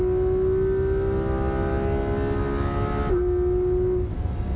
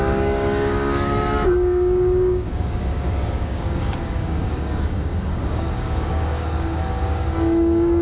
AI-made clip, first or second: second